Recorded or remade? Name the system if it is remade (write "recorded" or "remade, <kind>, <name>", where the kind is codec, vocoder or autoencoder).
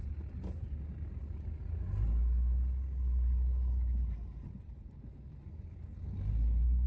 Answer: recorded